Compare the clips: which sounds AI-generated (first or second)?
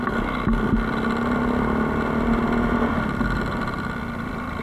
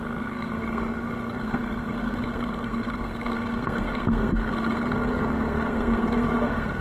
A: second